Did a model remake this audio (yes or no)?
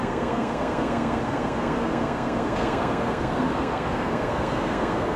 yes